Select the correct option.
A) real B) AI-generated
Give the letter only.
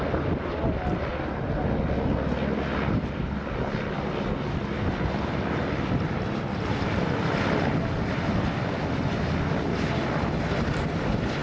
A